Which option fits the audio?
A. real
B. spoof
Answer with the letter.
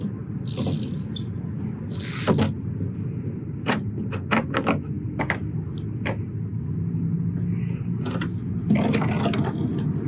A